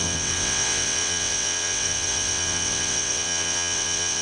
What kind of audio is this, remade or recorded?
remade